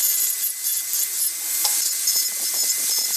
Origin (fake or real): real